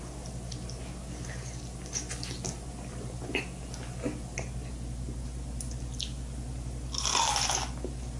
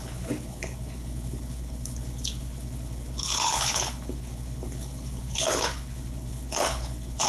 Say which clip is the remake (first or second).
second